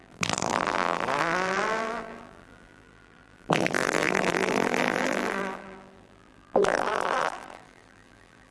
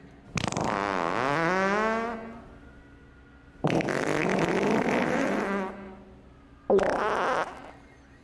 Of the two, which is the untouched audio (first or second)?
second